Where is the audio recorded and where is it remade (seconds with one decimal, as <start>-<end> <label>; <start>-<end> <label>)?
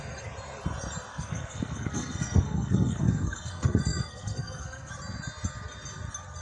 0.0-1.1 recorded; 1.1-4.9 remade; 4.9-6.4 recorded